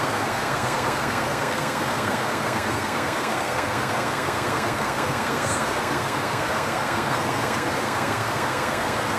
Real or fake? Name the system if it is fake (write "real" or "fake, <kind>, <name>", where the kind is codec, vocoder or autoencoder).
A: fake, codec, SNAC